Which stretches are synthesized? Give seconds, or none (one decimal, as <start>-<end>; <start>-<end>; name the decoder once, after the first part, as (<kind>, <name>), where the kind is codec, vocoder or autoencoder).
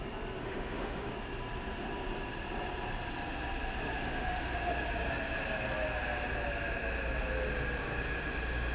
0.4-1.1 (autoencoder, DAC-VAE); 3.9-4.7